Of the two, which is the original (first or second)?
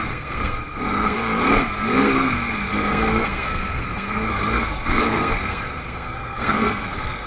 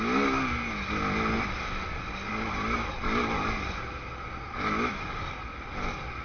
second